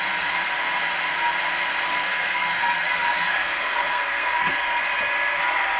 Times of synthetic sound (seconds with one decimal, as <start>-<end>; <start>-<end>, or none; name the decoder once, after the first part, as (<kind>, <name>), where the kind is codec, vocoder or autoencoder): 1.9-4.5 (codec, SNAC)